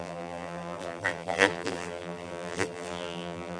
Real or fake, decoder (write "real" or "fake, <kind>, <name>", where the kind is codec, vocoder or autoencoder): fake, vocoder, BigVGAN v2